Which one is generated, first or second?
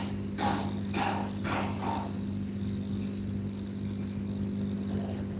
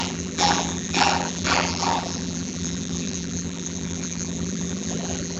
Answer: second